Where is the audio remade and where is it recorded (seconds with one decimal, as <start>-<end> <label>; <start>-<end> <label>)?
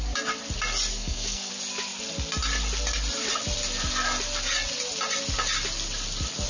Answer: 0.0-0.9 recorded; 0.9-1.5 remade; 1.5-6.5 recorded